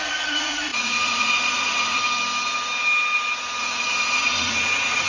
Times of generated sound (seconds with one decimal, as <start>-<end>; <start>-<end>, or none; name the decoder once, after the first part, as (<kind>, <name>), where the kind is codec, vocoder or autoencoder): 0.0-2.0 (vocoder, Vocos); 3.6-5.1